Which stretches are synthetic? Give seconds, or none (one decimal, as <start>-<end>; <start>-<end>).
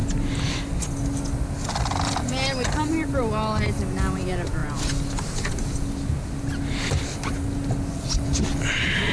none